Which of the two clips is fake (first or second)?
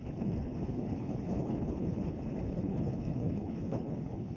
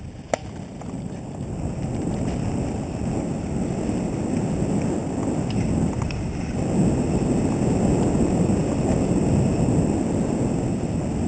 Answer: first